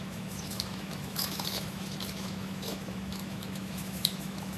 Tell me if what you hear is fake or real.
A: fake